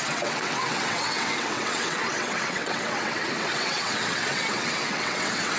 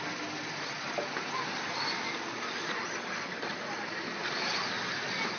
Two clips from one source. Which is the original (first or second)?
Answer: second